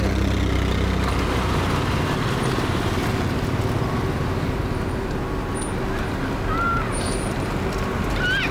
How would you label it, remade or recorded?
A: recorded